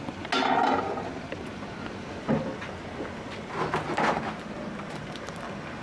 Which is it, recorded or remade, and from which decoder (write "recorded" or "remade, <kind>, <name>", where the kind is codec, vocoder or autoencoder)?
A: recorded